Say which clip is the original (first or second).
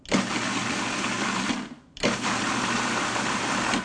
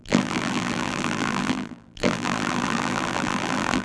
first